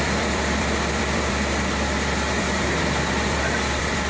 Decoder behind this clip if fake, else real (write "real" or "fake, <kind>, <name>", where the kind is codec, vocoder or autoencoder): fake, vocoder, BigVGAN v2